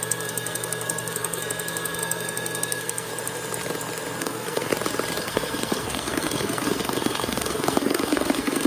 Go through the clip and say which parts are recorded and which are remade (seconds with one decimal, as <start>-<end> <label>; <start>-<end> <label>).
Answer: 0.0-3.1 remade; 3.1-4.2 recorded; 4.2-4.7 remade; 4.7-5.2 recorded; 5.2-8.7 remade